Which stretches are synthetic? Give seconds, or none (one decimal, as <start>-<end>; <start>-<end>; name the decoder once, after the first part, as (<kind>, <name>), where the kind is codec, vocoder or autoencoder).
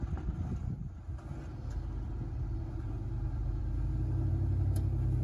none